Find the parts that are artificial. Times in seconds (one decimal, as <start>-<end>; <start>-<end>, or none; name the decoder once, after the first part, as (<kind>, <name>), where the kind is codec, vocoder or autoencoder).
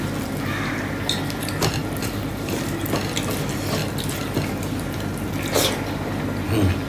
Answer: 1.8-2.5 (vocoder, BigVGAN v2)